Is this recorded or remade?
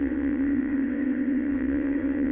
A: remade